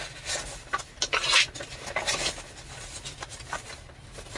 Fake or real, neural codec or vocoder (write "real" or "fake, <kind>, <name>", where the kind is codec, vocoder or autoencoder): real